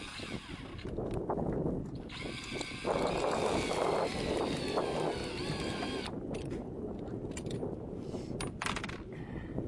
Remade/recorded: recorded